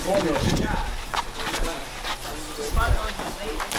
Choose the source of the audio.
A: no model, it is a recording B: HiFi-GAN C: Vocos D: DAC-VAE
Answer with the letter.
A